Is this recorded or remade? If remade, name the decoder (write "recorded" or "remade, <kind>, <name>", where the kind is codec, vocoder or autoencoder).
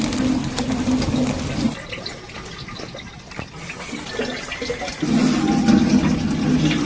recorded